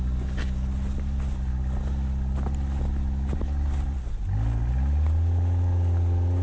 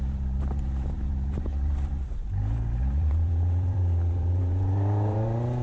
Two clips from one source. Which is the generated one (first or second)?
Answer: second